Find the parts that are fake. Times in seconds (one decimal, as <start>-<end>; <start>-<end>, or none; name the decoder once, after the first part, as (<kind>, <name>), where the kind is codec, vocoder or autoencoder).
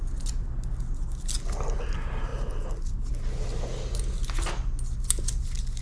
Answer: none